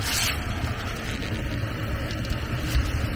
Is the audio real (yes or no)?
yes